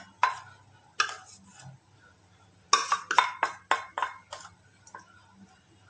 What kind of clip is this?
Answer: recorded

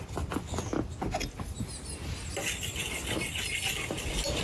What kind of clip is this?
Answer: recorded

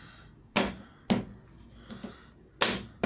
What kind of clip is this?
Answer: recorded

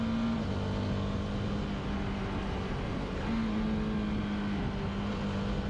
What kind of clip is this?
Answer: recorded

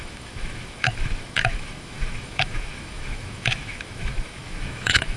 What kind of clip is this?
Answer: remade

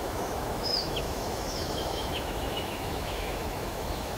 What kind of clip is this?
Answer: remade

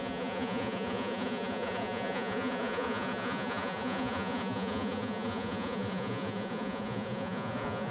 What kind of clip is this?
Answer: remade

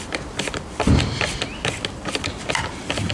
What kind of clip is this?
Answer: recorded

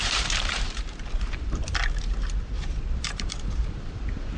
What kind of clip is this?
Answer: remade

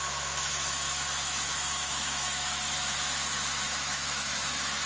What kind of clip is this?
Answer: remade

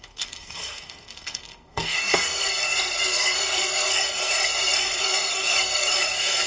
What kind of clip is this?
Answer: remade